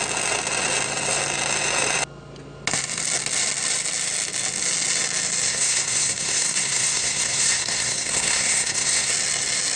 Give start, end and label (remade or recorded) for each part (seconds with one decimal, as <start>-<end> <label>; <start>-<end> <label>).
0.0-5.5 recorded; 5.5-9.1 remade; 9.1-9.8 recorded